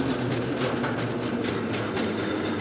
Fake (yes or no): no